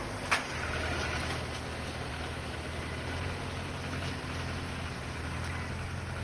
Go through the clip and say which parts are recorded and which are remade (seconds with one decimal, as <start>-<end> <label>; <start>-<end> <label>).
0.0-6.2 recorded